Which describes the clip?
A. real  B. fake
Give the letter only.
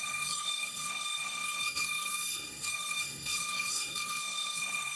B